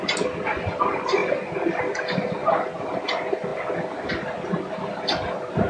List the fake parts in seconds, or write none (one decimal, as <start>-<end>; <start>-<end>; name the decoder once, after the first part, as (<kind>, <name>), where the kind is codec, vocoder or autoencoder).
none